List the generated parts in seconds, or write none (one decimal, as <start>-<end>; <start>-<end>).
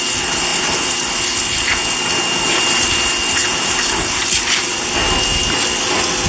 3.5-4.7